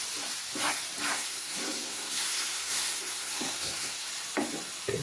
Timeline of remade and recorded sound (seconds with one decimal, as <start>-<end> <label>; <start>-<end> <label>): 0.0-1.1 recorded; 1.1-4.1 remade; 4.1-5.0 recorded